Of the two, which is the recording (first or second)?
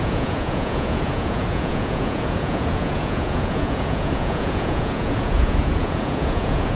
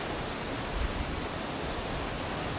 second